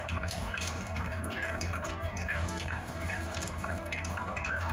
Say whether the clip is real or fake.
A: fake